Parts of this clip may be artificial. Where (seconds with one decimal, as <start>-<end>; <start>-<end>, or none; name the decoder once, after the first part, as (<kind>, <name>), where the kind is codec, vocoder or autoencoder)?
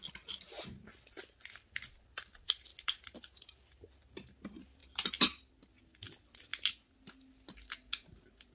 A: none